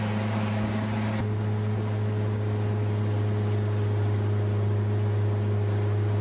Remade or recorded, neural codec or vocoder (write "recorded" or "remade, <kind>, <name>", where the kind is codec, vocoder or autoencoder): recorded